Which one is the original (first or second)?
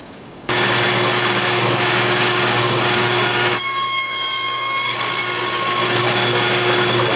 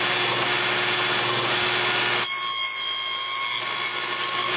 second